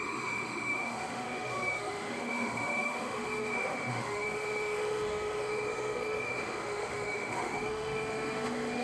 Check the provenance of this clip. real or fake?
fake